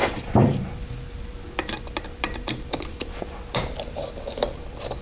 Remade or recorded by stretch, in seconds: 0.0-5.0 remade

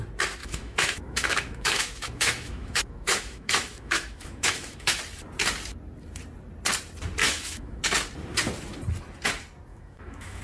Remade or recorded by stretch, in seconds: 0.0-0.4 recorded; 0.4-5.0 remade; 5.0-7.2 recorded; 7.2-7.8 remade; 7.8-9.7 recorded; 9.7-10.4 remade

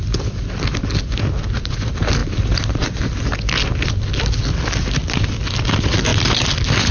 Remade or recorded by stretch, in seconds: 0.0-2.2 recorded; 2.2-3.0 remade; 3.0-6.1 recorded; 6.1-6.9 remade